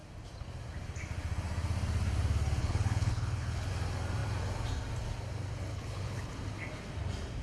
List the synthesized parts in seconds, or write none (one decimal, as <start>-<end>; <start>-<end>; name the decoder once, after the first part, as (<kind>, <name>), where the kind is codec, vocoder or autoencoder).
2.6-3.7 (codec, HILCodec); 5.7-6.3